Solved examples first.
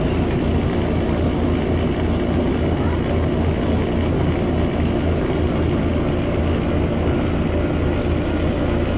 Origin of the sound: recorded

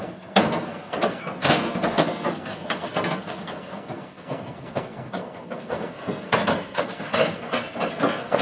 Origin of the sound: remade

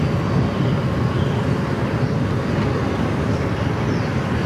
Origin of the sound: recorded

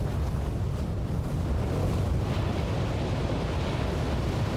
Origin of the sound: recorded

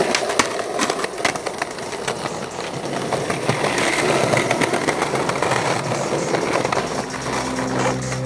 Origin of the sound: recorded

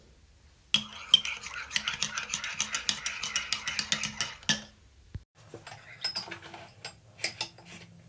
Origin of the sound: recorded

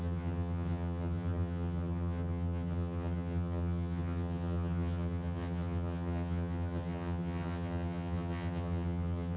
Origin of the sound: remade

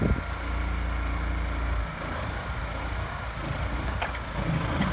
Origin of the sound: recorded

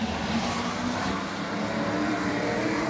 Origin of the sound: remade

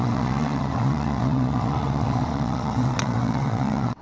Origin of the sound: remade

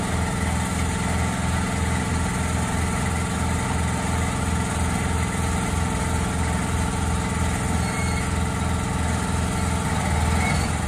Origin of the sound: recorded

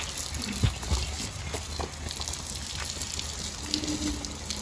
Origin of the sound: recorded